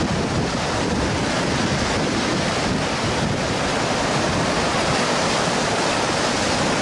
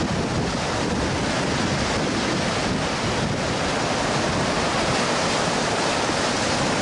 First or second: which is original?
second